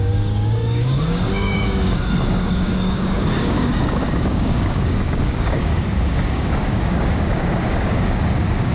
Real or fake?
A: fake